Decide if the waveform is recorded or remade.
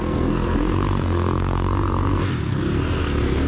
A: remade